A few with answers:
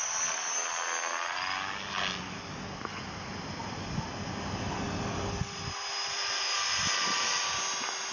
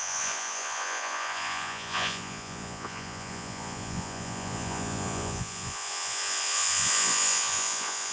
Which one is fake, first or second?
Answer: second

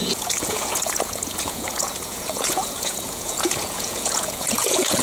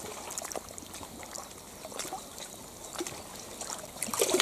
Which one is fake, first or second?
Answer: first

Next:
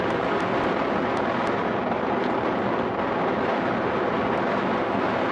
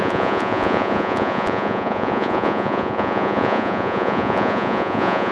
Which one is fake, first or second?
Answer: second